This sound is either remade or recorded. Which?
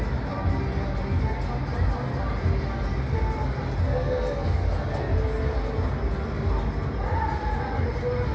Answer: recorded